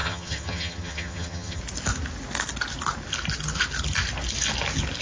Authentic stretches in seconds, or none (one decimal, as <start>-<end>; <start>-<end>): 1.6-5.0